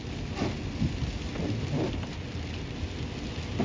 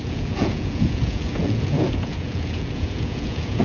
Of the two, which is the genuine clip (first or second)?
first